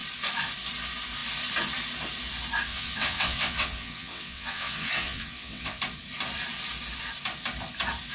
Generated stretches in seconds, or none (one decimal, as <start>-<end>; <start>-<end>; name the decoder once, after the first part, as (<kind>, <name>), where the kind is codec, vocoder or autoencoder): 2.7-5.8 (vocoder, WaveNeXt)